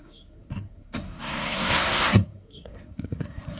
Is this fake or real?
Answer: fake